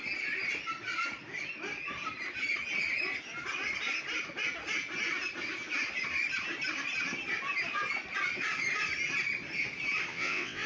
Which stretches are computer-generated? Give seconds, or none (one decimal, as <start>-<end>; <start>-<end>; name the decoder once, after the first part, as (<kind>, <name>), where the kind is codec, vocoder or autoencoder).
10.1-10.7 (vocoder, WaveNeXt)